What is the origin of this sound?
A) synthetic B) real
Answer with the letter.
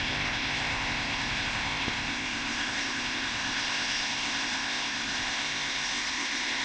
A